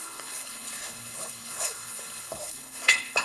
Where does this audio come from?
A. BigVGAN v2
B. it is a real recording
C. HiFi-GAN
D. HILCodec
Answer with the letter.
D